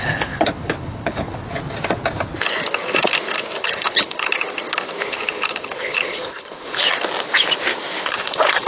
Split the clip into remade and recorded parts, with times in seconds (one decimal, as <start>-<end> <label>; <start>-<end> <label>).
0.0-1.4 remade; 1.4-3.6 recorded; 3.6-4.3 remade; 4.3-5.0 recorded; 5.0-6.8 remade; 6.8-8.0 recorded; 8.0-8.7 remade